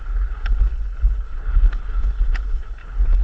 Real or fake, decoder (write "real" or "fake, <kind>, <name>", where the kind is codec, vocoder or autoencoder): fake, codec, HILCodec